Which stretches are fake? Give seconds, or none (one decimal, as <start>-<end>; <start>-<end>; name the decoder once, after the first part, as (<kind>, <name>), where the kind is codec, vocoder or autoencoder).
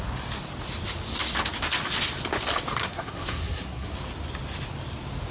2.8-3.9 (codec, SNAC)